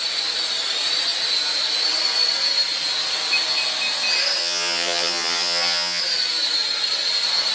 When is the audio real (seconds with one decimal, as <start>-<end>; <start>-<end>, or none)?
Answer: 0.0-4.4; 6.0-7.5